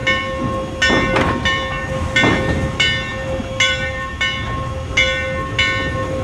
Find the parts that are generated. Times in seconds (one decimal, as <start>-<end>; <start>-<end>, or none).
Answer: none